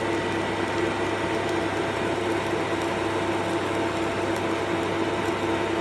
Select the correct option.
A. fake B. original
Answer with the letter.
B